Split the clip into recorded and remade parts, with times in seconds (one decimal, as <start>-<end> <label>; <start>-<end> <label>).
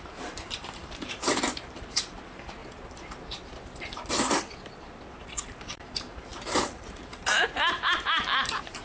0.0-2.6 remade; 2.6-5.4 recorded; 5.4-8.8 remade